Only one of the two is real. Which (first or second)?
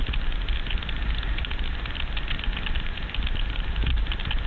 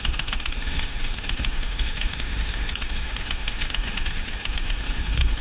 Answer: first